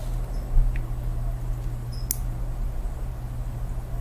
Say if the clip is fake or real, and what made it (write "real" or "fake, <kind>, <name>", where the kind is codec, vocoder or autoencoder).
real